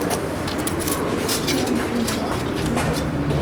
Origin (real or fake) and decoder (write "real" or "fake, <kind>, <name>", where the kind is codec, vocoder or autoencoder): fake, vocoder, BigVGAN v2